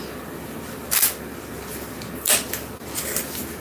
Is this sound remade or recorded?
recorded